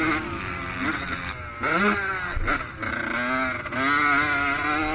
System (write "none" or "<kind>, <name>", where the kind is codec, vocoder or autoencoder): none